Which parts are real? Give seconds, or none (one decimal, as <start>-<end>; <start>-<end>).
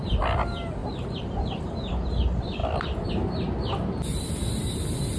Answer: 0.0-5.2